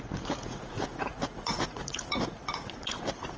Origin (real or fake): fake